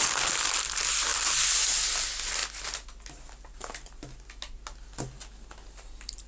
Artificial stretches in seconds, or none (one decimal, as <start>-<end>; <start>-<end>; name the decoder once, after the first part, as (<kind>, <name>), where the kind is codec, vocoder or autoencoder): none